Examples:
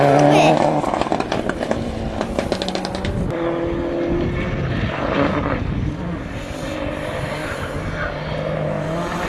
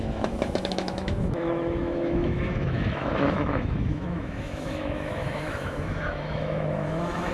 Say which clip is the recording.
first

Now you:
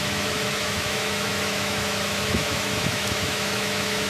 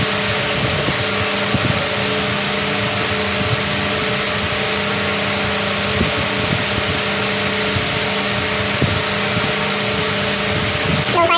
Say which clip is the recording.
second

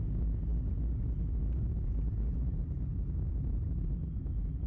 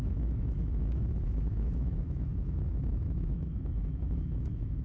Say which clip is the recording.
first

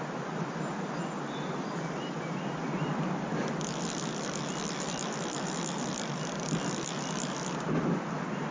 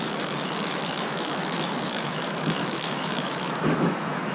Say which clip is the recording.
first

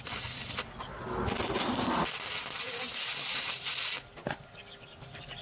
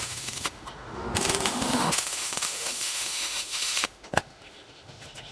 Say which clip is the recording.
first